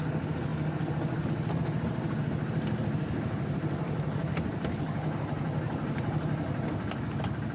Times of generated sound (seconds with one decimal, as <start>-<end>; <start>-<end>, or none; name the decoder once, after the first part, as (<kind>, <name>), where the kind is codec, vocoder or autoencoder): none